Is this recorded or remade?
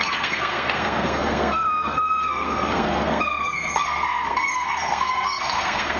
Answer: remade